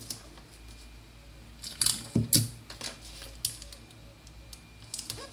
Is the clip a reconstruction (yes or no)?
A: no